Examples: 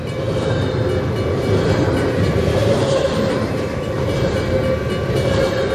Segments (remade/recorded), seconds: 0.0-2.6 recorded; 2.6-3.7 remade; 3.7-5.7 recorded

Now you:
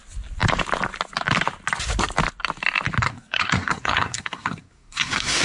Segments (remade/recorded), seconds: 0.0-3.0 recorded; 3.0-5.4 remade

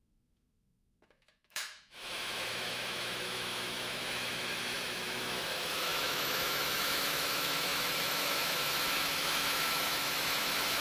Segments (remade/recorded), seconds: 0.0-10.8 remade

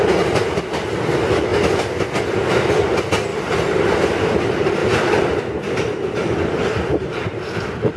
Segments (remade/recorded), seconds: 0.0-1.5 recorded; 1.5-2.2 remade; 2.2-3.3 recorded; 3.3-4.3 remade; 4.3-4.8 recorded; 4.8-5.4 remade; 5.4-8.0 recorded

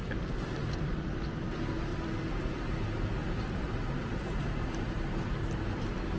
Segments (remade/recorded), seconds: 0.0-0.9 remade; 0.9-3.2 recorded; 3.2-4.3 remade; 4.3-6.2 recorded